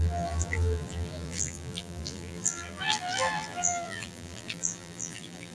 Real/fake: fake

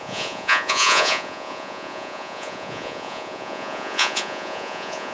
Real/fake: fake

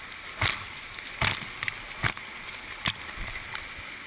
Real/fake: real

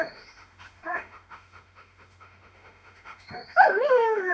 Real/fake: fake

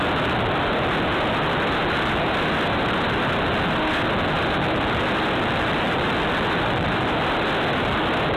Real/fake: real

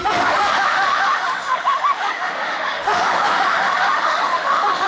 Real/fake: fake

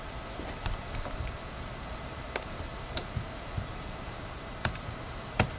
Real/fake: fake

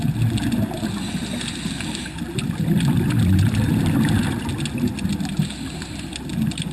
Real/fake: real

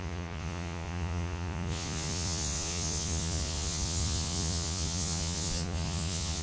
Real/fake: fake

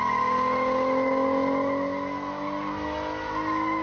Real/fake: real